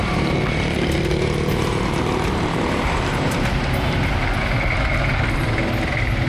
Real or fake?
fake